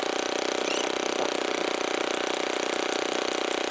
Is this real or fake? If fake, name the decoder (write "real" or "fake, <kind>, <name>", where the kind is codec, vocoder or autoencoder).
real